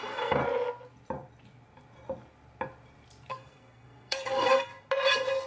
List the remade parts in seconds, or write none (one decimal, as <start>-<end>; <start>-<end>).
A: 0.0-0.4; 3.3-4.7